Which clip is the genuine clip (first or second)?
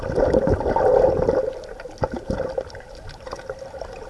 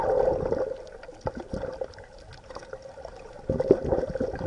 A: second